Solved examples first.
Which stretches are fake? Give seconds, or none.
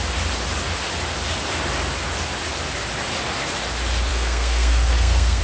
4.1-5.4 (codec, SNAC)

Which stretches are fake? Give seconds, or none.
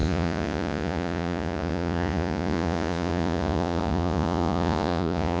0.0-5.4 (vocoder, Vocos)